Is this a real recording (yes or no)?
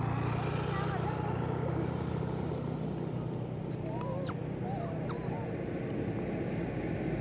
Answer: yes